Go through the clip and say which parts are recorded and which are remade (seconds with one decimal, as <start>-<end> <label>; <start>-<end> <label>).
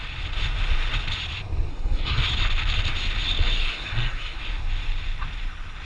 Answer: 0.0-1.7 recorded; 1.7-2.3 remade; 2.3-3.6 recorded; 3.6-4.4 remade; 4.4-5.8 recorded